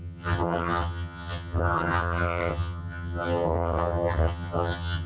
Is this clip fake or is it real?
fake